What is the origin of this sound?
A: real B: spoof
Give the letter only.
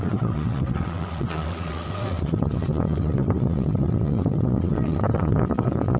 B